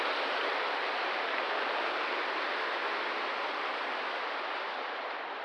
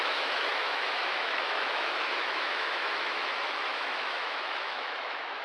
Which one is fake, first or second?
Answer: second